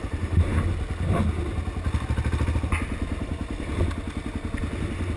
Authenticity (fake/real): real